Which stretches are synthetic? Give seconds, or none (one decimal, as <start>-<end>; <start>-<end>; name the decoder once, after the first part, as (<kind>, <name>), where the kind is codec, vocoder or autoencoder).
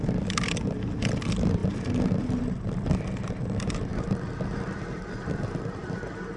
none